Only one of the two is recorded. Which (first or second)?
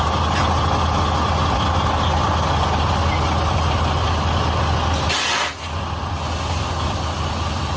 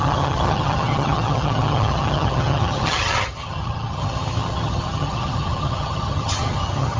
first